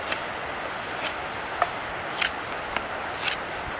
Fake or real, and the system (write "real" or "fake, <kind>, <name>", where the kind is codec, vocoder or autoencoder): real